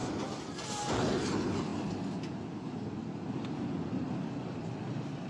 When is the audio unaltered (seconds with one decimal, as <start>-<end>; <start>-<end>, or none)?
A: 0.0-5.3